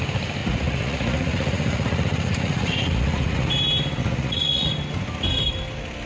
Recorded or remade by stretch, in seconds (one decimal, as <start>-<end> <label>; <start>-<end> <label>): 0.0-0.4 recorded; 0.4-3.5 remade; 3.5-4.0 recorded; 4.0-4.7 remade; 4.7-6.1 recorded